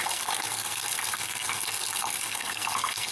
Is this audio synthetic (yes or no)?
yes